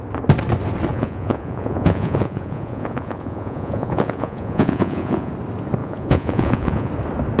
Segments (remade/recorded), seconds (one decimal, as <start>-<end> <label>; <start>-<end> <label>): 0.0-0.9 recorded; 0.9-5.3 remade; 5.3-5.8 recorded; 5.8-6.9 remade; 6.9-7.4 recorded